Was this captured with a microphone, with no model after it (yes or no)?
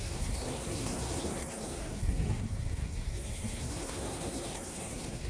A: no